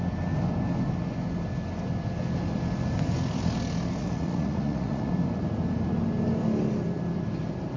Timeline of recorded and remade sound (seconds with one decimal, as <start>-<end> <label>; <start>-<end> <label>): 0.0-4.0 recorded; 4.0-5.1 remade; 5.1-7.8 recorded